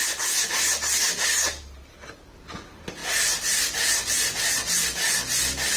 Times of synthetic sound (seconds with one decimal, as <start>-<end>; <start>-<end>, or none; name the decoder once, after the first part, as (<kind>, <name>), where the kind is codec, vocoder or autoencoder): none